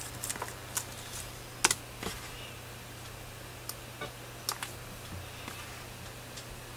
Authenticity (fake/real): real